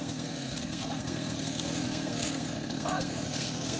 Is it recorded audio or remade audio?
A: remade